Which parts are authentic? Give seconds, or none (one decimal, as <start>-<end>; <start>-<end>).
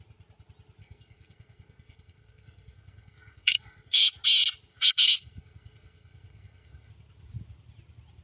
0.0-0.8; 4.2-4.7; 6.9-8.2